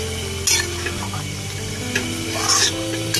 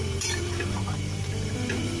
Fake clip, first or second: second